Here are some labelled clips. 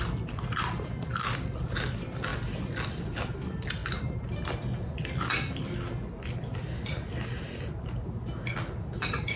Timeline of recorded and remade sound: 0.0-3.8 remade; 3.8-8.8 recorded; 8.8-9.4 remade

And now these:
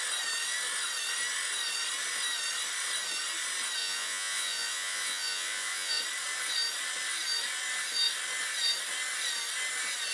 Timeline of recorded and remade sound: 0.0-3.8 recorded; 3.8-6.0 remade; 6.0-10.1 recorded

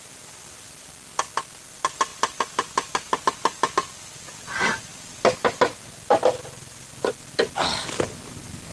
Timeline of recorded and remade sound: 0.0-8.7 recorded